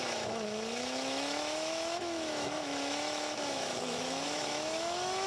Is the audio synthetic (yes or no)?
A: yes